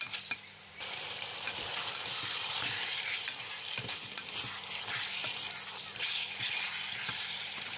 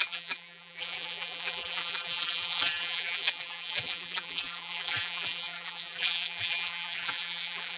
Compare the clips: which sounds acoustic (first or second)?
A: first